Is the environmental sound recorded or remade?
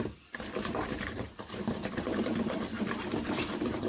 remade